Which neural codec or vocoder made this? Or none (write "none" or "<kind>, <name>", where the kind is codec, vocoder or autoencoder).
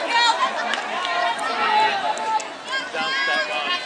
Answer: none